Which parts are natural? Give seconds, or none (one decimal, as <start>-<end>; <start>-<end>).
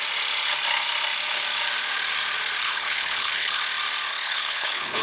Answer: 0.0-2.6; 3.6-4.1